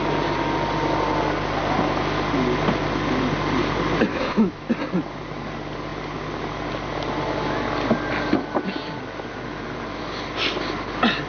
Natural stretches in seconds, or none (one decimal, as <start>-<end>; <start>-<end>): 0.0-4.1; 4.6-11.3